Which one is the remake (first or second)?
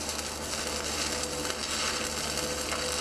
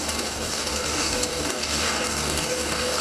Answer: second